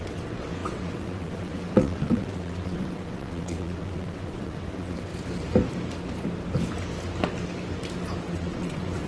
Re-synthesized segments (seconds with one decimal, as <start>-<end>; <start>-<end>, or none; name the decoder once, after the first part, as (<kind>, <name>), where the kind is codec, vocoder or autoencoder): 0.0-5.1 (vocoder, WaveNeXt); 8.3-9.1